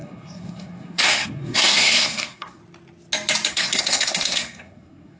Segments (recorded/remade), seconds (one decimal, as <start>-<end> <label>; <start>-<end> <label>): 0.0-2.6 remade; 2.6-3.5 recorded; 3.5-5.2 remade